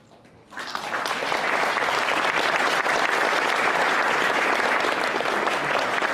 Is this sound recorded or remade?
recorded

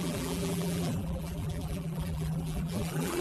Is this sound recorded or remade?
remade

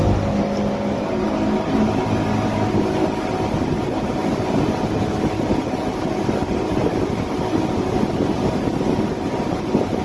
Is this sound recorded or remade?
recorded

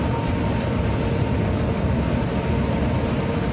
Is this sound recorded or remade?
recorded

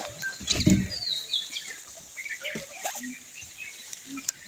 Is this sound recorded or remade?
remade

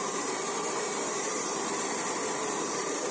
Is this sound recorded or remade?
remade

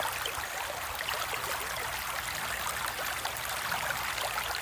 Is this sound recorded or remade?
recorded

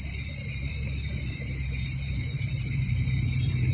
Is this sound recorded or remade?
remade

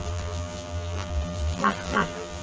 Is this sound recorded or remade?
remade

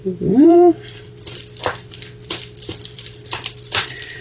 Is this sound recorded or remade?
remade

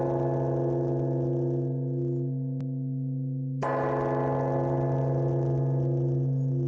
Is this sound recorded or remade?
recorded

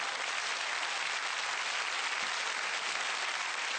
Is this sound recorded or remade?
recorded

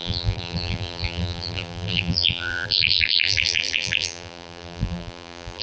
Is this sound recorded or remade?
remade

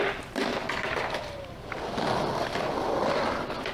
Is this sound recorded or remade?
remade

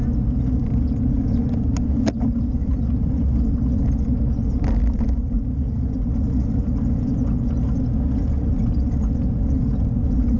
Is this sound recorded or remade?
recorded